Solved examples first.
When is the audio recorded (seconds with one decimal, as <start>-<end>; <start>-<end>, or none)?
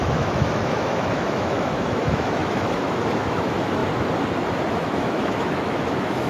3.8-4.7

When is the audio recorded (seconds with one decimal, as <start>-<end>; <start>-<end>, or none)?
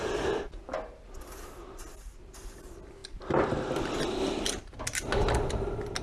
0.0-6.0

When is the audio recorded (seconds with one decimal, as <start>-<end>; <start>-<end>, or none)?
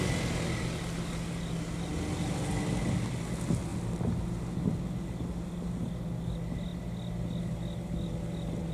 0.0-8.7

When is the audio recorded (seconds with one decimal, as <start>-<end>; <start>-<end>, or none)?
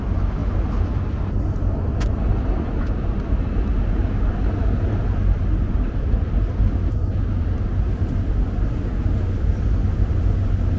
0.0-10.8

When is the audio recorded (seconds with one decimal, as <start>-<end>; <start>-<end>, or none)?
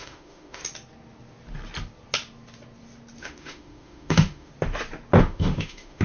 0.6-3.2; 4.5-5.2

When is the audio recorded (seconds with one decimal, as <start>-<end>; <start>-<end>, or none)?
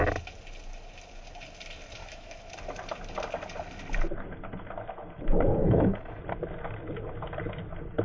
0.0-2.0; 2.5-5.6; 6.2-8.0